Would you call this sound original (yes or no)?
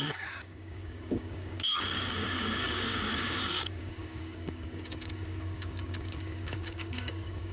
no